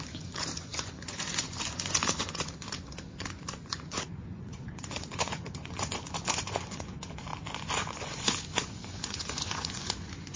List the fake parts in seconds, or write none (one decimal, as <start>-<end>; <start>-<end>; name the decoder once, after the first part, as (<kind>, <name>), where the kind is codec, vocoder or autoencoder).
0.0-7.3 (vocoder, Vocos); 7.9-10.4